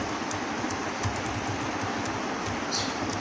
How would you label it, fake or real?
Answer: real